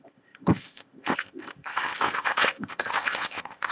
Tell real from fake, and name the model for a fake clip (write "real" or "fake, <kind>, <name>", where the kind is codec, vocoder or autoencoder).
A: fake, codec, ZipCodec